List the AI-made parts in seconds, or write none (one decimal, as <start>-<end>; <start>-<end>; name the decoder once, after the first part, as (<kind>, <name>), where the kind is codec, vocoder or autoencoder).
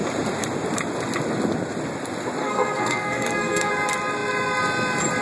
2.4-3.7 (codec, SNAC)